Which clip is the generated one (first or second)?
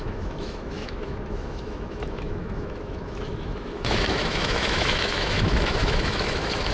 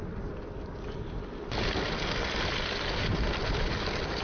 first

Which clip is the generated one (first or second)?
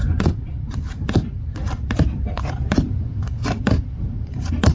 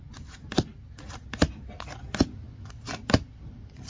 first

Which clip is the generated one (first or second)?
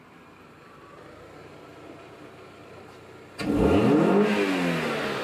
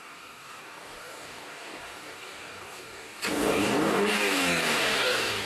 second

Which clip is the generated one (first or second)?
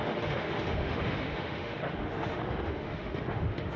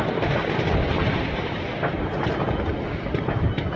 first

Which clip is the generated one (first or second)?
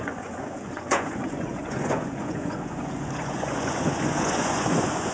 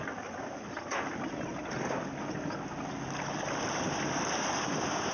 first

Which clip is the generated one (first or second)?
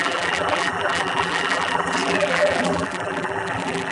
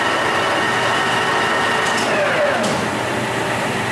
first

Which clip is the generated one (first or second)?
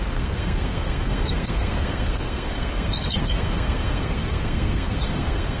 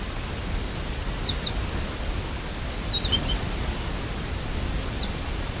first